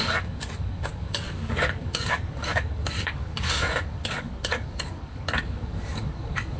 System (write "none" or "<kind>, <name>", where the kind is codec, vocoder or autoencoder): codec, DAC